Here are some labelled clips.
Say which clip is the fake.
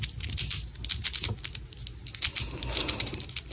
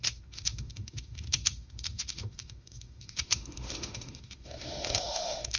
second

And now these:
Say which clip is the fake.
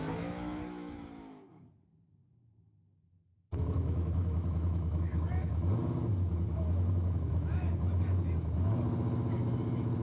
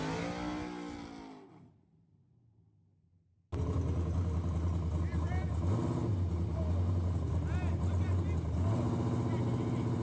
first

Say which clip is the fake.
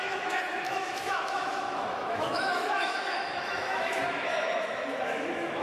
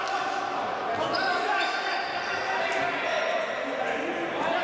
first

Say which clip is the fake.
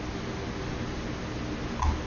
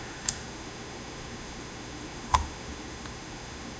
second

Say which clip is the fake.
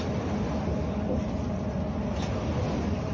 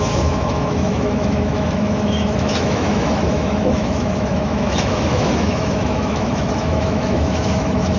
second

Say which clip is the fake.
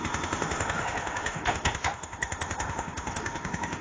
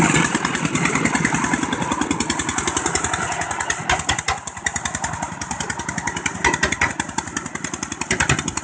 first